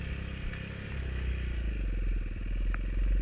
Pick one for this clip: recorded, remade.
recorded